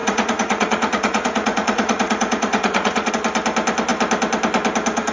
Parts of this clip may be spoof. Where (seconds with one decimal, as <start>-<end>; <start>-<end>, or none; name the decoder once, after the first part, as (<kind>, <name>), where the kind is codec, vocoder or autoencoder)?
0.0-3.1 (vocoder, Vocos)